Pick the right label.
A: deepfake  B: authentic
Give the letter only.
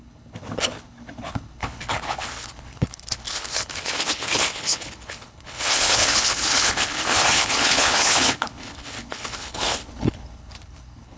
A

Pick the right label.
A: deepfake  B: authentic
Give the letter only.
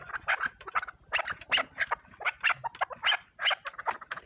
B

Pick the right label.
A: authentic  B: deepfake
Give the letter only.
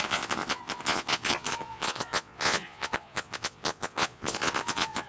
B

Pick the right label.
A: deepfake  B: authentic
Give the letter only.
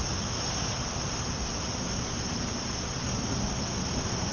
B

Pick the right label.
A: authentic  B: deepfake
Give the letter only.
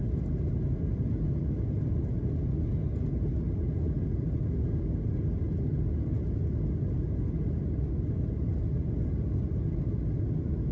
A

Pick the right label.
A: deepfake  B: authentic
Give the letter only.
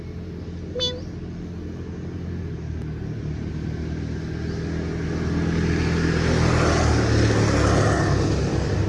B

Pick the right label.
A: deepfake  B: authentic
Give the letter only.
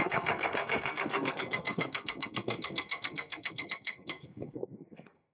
A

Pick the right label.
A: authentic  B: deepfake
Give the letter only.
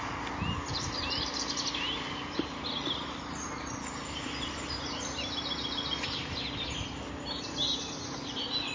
A